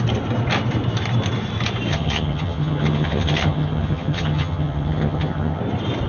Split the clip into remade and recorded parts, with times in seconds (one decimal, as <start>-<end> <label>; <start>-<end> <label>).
0.0-1.9 recorded; 1.9-5.6 remade; 5.6-6.1 recorded